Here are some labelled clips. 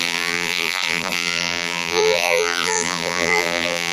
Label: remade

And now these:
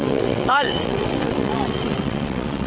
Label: remade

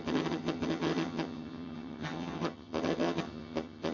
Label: remade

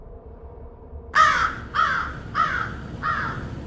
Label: remade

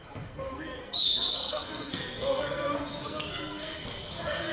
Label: remade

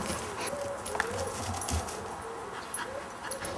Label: recorded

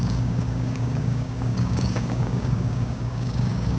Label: remade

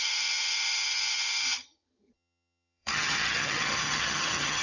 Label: remade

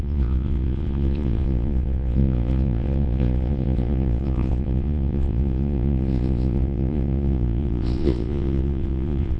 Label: remade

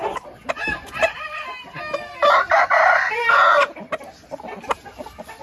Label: recorded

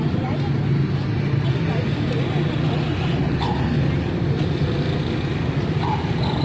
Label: recorded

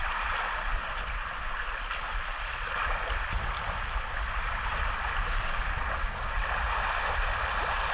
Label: recorded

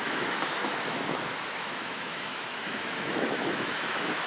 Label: remade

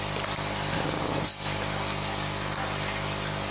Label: recorded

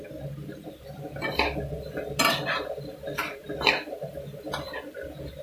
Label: recorded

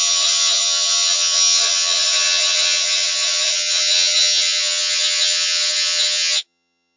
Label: remade